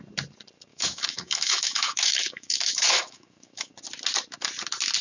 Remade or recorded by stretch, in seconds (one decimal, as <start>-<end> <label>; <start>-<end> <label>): 0.0-0.7 recorded; 0.7-3.7 remade; 3.7-5.0 recorded